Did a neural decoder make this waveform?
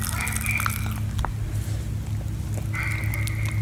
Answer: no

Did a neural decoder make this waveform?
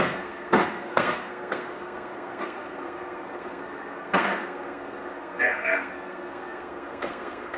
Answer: yes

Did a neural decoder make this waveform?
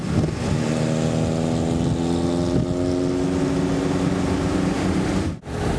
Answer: no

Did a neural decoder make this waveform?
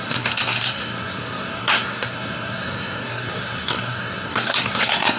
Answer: yes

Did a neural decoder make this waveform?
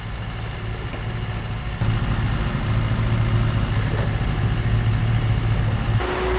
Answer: no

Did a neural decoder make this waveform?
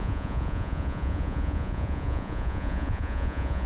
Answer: yes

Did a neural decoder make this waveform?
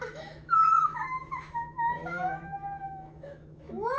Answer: yes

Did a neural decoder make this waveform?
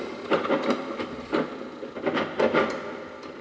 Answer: no